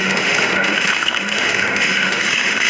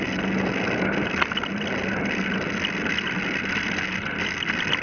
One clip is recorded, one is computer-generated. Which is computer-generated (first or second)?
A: first